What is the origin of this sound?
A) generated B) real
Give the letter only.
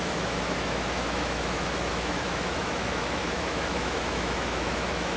A